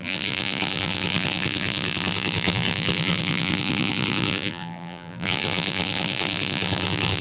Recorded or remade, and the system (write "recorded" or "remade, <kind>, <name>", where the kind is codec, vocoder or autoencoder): remade, vocoder, BigVGAN v2